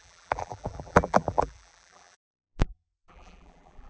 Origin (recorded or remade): remade